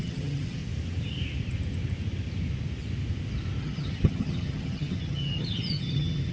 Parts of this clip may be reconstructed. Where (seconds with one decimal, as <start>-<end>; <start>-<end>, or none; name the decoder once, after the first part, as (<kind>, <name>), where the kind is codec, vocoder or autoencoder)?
0.0-0.6 (vocoder, HiFi-GAN); 3.6-6.3